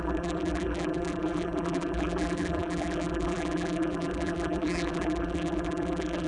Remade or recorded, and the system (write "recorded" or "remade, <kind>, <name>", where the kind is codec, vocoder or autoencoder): remade, vocoder, BigVGAN v2